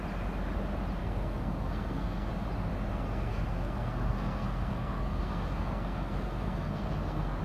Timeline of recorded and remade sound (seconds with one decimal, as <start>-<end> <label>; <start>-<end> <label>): 0.0-1.0 recorded; 1.0-2.3 remade; 2.3-2.9 recorded; 2.9-7.4 remade